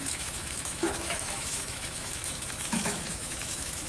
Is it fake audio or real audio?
fake